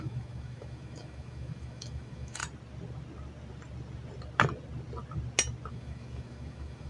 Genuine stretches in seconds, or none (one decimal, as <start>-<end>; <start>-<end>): 2.4-5.7